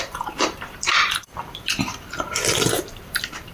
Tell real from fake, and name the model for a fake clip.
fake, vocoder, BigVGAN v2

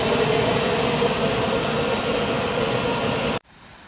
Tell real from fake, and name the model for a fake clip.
real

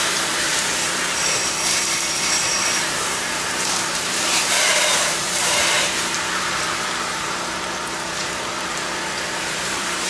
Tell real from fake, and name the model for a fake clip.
fake, vocoder, BigVGAN v2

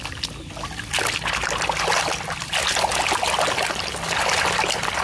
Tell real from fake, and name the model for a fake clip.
real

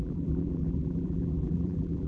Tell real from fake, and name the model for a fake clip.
fake, vocoder, BigVGAN v2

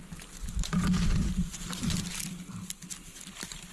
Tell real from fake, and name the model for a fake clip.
fake, vocoder, BigVGAN v2